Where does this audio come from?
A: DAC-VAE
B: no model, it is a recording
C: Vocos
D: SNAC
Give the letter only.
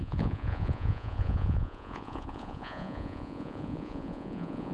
C